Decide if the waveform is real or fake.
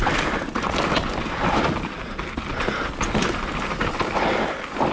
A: real